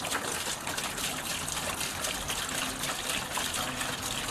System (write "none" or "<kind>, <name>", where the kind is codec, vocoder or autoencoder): none